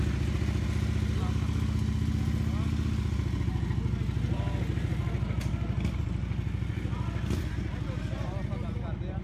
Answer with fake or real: real